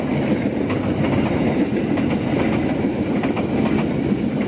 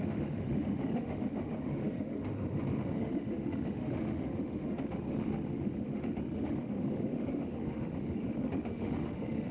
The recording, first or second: first